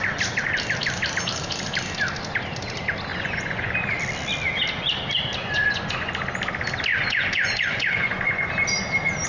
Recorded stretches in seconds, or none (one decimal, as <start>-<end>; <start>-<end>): 0.0-3.1; 3.7-5.4; 6.1-6.9; 8.5-9.3